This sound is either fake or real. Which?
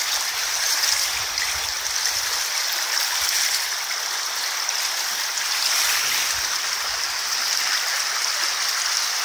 real